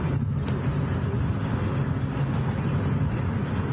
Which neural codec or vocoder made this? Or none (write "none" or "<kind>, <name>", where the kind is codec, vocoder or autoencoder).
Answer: none